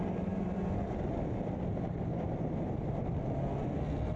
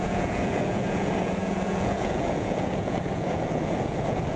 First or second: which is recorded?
first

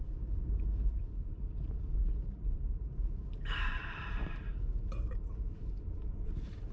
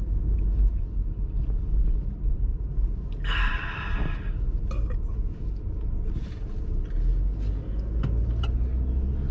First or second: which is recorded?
second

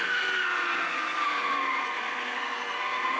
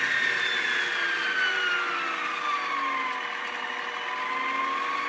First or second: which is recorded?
second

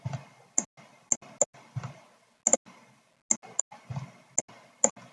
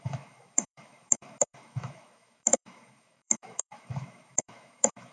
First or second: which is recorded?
first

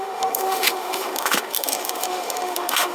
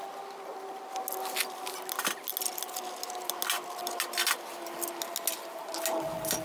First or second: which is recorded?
second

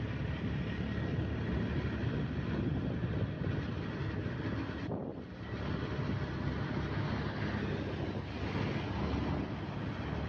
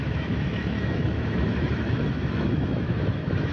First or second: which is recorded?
first